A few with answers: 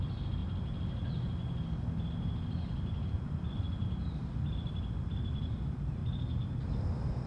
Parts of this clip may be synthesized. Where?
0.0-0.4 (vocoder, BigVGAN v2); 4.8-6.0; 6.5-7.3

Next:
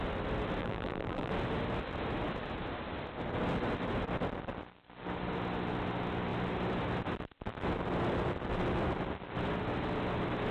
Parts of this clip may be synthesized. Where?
0.6-1.3 (vocoder, BigVGAN v2)

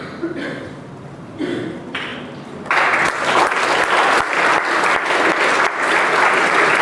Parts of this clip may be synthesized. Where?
none

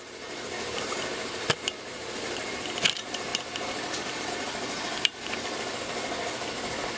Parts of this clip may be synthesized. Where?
0.0-7.0 (vocoder, BigVGAN v2)

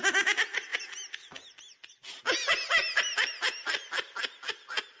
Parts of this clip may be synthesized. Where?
none

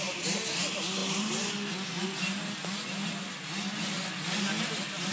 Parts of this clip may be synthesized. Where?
none

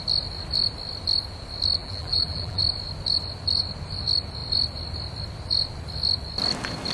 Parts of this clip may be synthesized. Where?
1.8-2.6 (vocoder, BigVGAN v2)